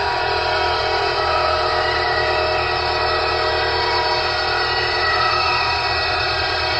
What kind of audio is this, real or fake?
real